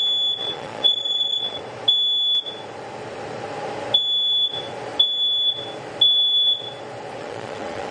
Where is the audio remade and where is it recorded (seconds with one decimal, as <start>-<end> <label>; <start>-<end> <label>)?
0.0-0.4 recorded; 0.4-1.6 remade; 1.6-7.2 recorded; 7.2-7.9 remade